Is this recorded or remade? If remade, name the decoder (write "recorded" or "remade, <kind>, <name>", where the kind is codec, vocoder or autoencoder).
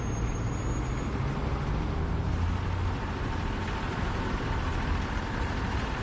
recorded